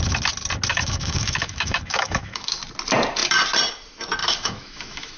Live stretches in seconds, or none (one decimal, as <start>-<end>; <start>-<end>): 0.0-0.7; 2.6-4.2